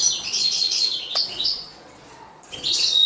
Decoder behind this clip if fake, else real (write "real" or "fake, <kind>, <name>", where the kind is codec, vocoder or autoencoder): fake, vocoder, Vocos